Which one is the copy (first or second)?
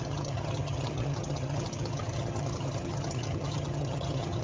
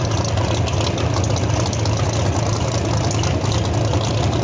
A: first